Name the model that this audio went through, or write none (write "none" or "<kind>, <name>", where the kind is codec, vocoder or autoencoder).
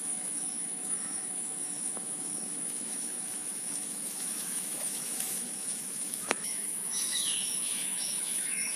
autoencoder, DAC-VAE